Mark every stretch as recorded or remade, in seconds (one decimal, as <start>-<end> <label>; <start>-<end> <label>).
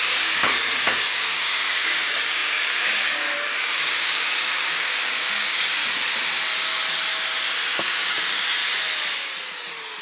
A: 0.0-5.8 remade; 5.8-7.8 recorded; 7.8-8.6 remade; 8.6-10.0 recorded